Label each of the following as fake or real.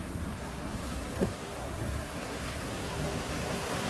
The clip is fake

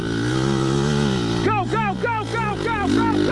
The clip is real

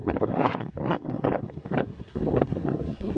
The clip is fake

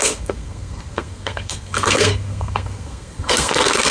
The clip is fake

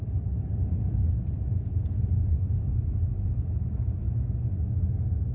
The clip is real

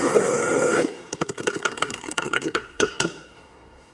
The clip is fake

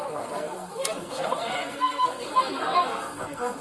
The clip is fake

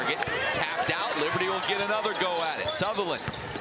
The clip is real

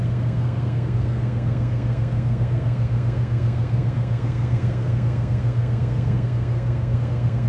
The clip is fake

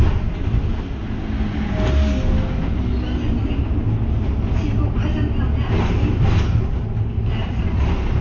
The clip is real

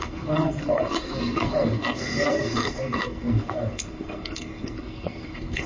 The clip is fake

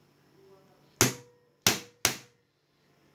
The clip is real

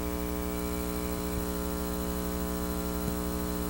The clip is real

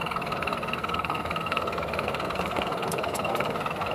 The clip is fake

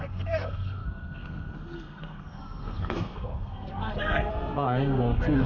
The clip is fake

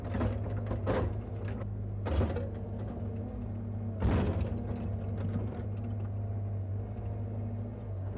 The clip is real